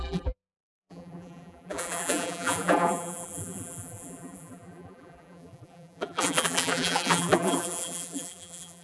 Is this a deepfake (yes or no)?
yes